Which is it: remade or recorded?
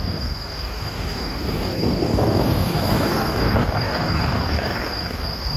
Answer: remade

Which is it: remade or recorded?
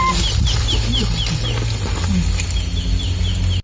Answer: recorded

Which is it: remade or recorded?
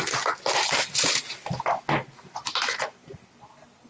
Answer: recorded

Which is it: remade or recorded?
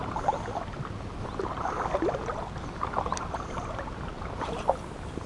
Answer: recorded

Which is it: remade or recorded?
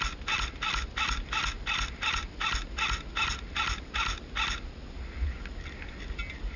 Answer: recorded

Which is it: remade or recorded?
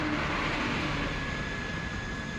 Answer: recorded